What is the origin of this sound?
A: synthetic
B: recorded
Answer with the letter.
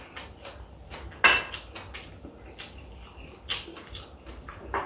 B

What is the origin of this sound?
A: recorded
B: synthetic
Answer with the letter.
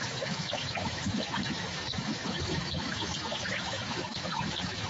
B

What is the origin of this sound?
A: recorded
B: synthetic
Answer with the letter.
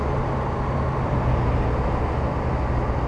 A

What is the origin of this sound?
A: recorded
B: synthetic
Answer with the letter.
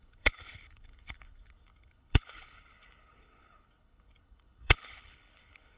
B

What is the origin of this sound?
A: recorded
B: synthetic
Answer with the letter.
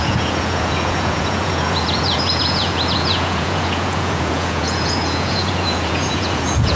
B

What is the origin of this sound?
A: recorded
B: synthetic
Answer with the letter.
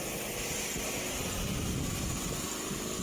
A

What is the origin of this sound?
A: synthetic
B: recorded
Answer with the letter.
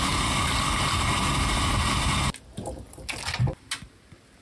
B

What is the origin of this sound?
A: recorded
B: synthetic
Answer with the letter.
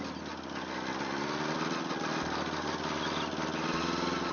A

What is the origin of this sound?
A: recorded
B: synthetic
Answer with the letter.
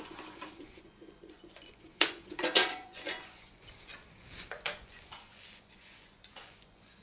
B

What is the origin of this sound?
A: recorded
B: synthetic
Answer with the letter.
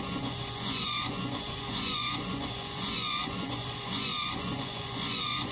B